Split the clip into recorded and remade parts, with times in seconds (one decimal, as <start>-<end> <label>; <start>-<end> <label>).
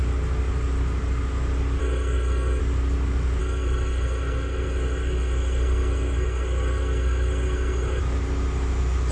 0.0-1.8 recorded; 1.8-2.6 remade; 2.6-3.4 recorded; 3.4-8.0 remade; 8.0-9.1 recorded